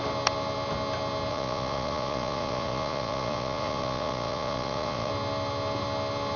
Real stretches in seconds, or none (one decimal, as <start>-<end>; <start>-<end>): 0.0-1.3; 5.1-6.4